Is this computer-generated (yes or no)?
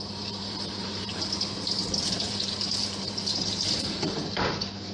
yes